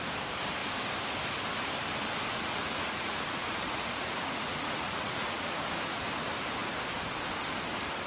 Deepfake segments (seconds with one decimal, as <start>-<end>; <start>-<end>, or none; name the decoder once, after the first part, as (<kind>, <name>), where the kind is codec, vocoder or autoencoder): 2.3-6.0 (vocoder, Vocos)